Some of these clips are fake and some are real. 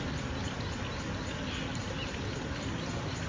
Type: real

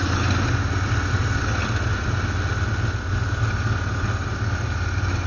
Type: real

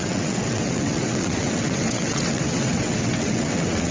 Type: fake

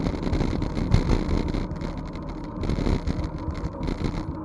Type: real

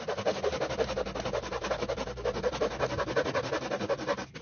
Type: real